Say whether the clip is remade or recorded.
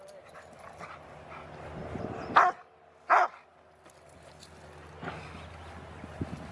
recorded